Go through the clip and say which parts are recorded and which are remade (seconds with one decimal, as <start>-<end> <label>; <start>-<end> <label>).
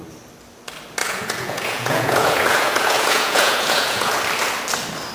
0.0-1.0 recorded; 1.0-4.1 remade; 4.1-5.1 recorded